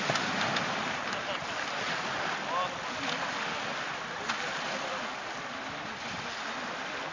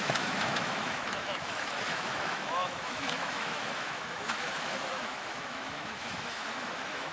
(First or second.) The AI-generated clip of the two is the second